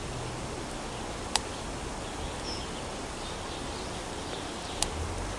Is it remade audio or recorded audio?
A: recorded